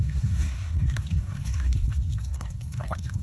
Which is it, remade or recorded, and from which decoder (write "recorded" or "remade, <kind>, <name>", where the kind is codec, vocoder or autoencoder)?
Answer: remade, codec, SNAC